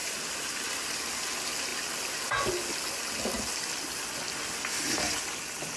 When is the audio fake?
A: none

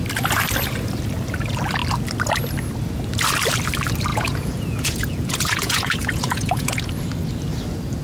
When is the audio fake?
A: 4.1-6.9 (vocoder, Vocos)

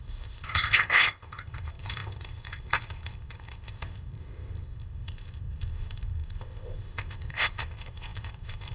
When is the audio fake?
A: 0.0-8.7 (codec, ZipCodec)

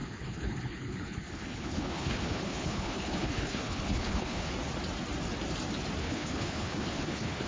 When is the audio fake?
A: 0.0-4.5 (codec, HILCodec); 6.0-7.5

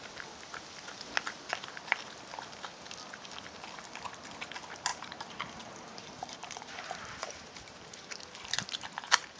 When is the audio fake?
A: 4.9-8.2 (vocoder, BigVGAN v2)